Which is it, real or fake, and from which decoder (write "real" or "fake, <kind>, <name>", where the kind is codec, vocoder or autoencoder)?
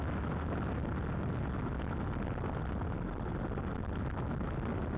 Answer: real